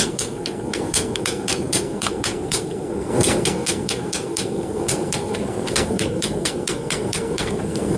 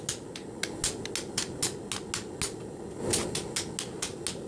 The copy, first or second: first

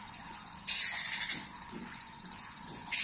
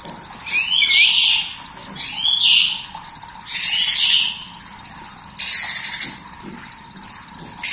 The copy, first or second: first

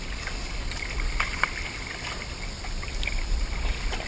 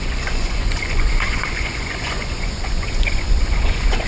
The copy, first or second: second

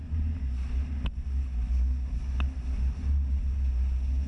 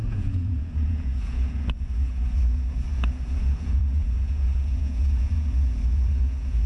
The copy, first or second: second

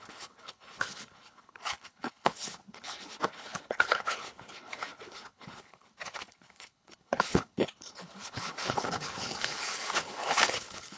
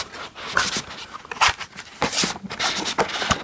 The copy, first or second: first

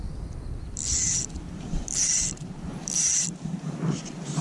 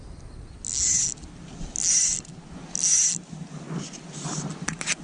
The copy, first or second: first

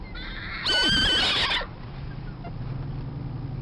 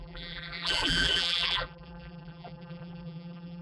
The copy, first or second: second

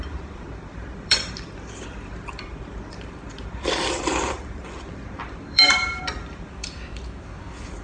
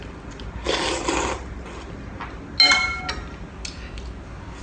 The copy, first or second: first